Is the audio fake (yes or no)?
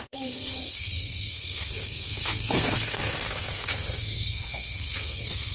yes